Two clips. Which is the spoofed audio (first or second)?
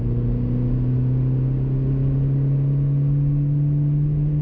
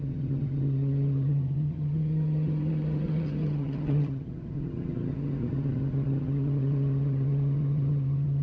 second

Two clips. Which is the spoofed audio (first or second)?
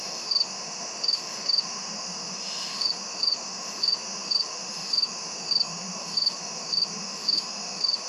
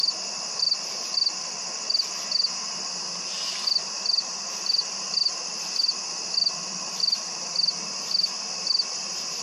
first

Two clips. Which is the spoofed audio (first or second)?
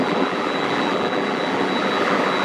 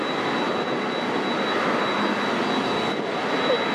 first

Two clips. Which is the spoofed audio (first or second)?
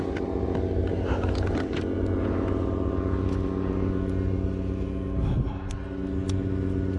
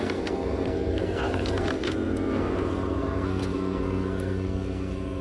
second